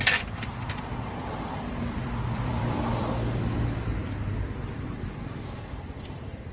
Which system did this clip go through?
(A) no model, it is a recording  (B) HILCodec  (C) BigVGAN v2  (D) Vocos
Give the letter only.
C